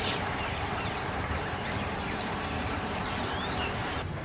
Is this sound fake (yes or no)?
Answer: yes